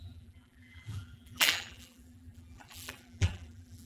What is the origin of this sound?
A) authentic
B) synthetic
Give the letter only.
B